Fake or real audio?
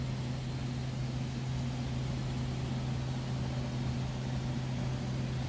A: real